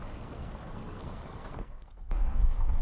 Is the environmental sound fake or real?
fake